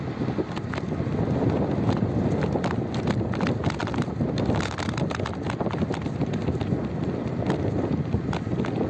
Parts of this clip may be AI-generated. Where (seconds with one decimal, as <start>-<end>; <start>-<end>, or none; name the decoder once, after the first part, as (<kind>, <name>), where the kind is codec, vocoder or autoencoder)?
none